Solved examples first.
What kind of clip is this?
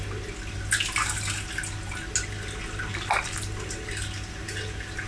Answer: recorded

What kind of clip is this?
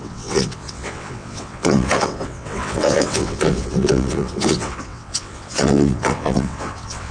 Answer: remade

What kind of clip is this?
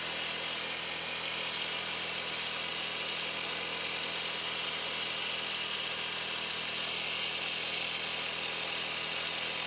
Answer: recorded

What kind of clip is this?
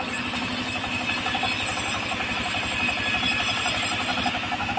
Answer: recorded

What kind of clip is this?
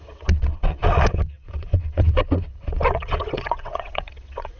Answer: remade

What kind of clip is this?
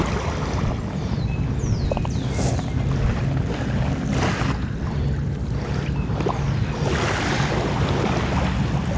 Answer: recorded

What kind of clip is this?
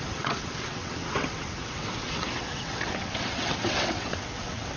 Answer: remade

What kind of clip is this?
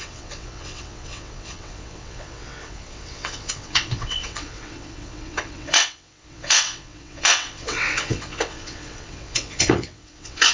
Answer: remade